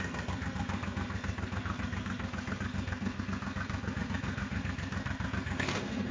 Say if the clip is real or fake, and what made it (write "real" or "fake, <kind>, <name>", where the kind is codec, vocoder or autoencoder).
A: fake, codec, SNAC